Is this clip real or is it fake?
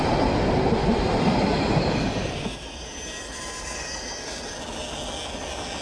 real